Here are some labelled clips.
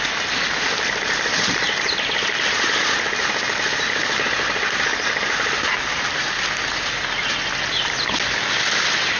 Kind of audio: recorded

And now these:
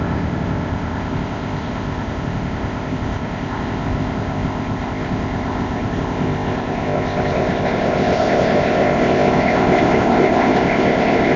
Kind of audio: remade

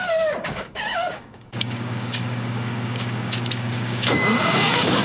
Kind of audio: remade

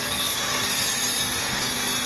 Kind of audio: recorded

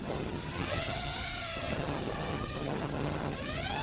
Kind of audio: remade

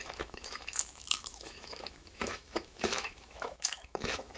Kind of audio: remade